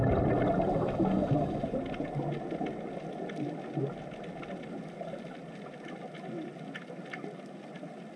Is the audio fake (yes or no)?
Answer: no